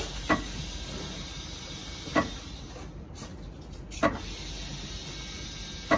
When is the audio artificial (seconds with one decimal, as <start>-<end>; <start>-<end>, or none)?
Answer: none